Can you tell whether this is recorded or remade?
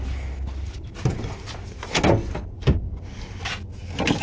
recorded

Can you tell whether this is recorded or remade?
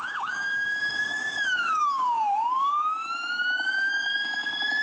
remade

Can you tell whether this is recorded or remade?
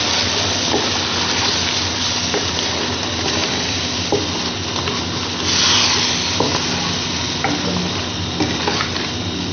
recorded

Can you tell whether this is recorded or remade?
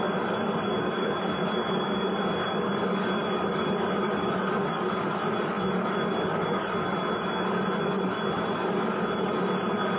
remade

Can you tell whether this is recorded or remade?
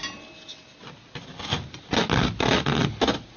recorded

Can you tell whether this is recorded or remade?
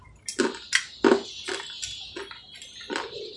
recorded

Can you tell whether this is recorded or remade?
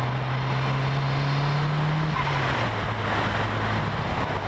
recorded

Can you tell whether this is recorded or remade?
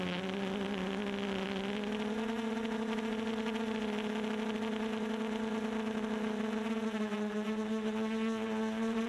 recorded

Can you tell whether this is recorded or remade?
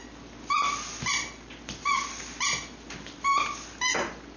recorded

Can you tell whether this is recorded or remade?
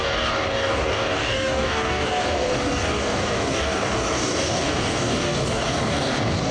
remade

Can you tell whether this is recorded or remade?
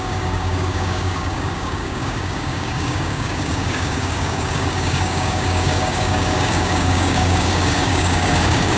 remade